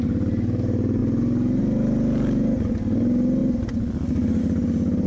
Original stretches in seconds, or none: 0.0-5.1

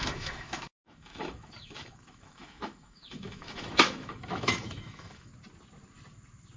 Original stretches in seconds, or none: 5.3-6.6

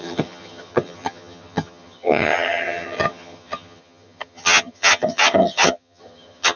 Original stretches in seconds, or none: none

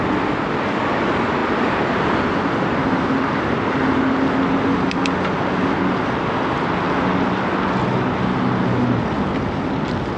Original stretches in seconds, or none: 0.0-10.2

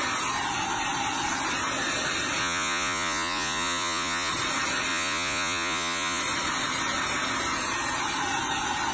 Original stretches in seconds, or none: 0.0-2.4; 4.3-4.9; 6.2-8.9

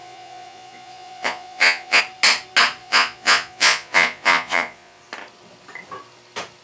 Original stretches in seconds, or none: 2.0-2.8; 5.0-6.6

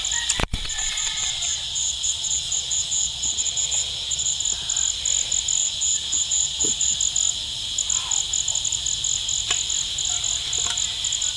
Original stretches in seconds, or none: 0.0-0.4; 4.4-5.6; 7.0-11.4